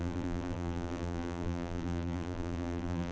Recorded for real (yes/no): no